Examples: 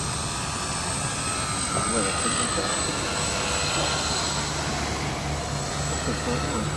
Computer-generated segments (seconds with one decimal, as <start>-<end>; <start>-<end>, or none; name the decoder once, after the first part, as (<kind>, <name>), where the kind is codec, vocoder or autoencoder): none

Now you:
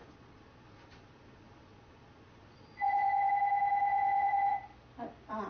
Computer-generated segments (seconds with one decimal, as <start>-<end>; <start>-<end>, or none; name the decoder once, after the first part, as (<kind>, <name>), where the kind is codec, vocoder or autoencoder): 0.0-3.3 (vocoder, Vocos); 3.9-4.5

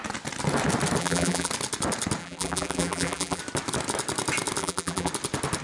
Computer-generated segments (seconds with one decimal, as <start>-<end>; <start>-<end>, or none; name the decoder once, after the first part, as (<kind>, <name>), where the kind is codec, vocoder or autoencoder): 1.0-1.5 (vocoder, BigVGAN v2); 2.2-3.4; 4.6-5.1